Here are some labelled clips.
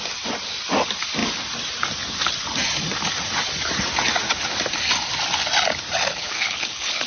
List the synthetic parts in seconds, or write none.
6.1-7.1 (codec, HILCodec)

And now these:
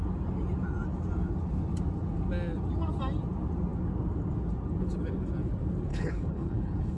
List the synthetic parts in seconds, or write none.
5.9-7.0 (codec, HILCodec)

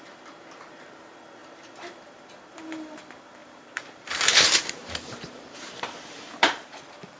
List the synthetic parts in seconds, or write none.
1.4-1.9 (vocoder, BigVGAN v2); 3.4-6.8

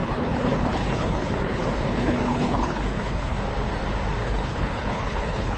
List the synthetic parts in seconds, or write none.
0.0-3.4 (codec, HILCodec); 4.2-5.6

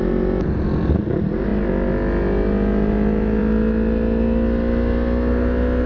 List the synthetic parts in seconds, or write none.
none